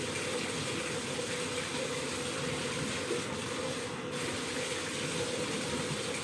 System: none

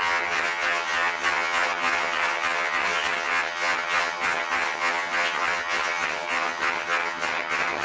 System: vocoder, HiFi-GAN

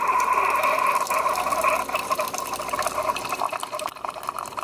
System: vocoder, BigVGAN v2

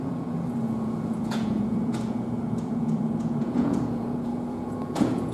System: vocoder, Vocos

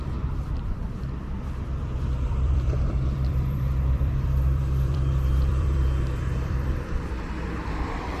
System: vocoder, BigVGAN v2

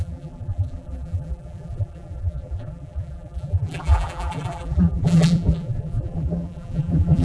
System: vocoder, BigVGAN v2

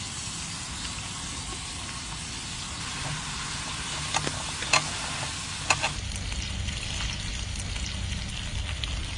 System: none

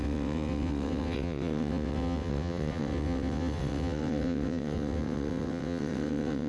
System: vocoder, WaveNeXt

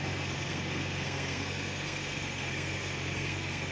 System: codec, SNAC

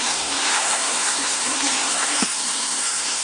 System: codec, SNAC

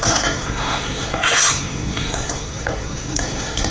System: codec, SNAC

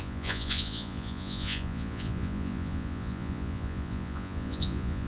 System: vocoder, Vocos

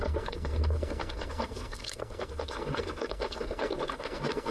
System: codec, SNAC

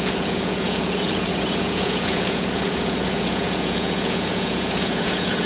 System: vocoder, Vocos